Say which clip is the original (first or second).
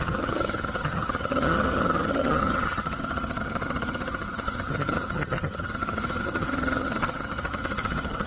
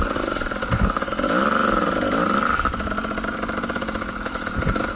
second